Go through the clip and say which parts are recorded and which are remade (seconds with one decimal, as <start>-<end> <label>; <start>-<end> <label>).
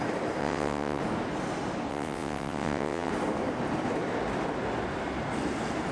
0.0-0.4 recorded; 0.4-1.0 remade; 1.0-1.9 recorded; 1.9-3.1 remade; 3.1-5.9 recorded